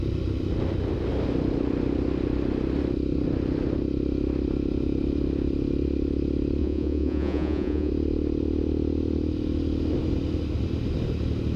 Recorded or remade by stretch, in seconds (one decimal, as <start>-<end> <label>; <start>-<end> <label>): 0.0-6.6 recorded; 6.6-7.9 remade; 7.9-11.6 recorded